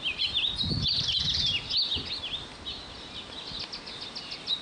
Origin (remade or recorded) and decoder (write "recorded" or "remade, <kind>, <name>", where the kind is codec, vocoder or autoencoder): recorded